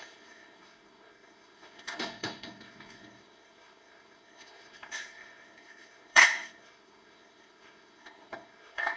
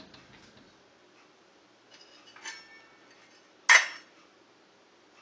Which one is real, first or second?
second